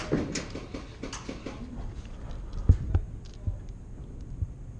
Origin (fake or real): real